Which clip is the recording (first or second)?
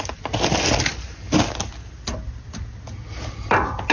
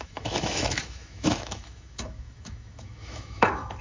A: first